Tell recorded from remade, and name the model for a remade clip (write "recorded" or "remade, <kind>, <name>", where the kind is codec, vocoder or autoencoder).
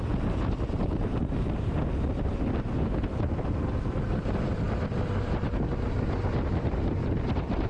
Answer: recorded